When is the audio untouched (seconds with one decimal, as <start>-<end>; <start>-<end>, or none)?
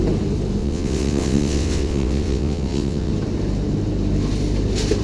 0.0-0.6; 3.1-5.0